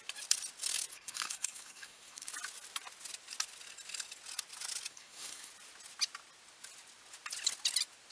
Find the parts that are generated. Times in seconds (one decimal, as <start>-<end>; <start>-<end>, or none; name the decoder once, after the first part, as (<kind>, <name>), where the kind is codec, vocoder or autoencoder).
0.9-2.3 (codec, SNAC); 4.9-5.5